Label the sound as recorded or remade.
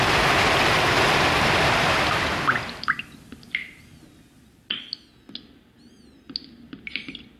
recorded